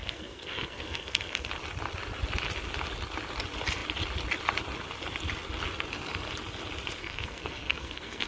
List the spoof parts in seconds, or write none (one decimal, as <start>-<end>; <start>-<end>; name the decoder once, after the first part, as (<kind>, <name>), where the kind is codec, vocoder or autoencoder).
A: 0.0-1.5 (codec, SNAC); 7.0-8.3